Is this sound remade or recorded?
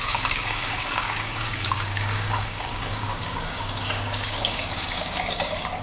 remade